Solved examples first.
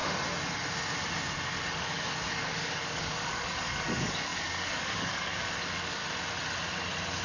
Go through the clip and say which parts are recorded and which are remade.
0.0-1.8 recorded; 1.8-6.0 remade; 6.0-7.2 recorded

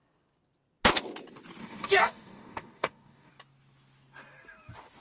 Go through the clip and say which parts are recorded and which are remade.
0.0-1.6 recorded; 1.6-3.3 remade; 3.3-5.0 recorded

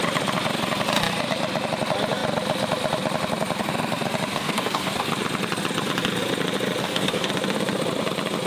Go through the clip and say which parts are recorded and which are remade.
0.0-4.3 recorded; 4.3-5.1 remade; 5.1-6.8 recorded; 6.8-7.3 remade; 7.3-8.5 recorded